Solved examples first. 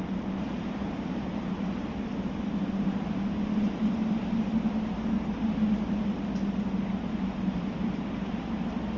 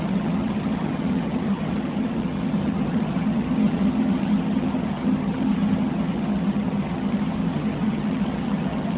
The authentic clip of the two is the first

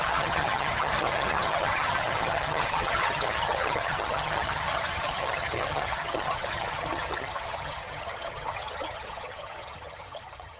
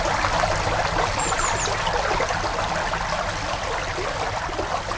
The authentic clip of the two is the second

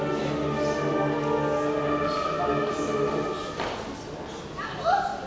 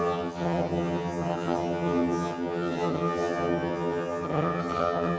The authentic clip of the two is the first